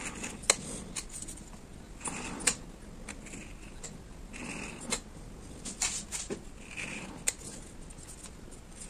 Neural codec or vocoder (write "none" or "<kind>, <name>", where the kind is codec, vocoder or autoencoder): none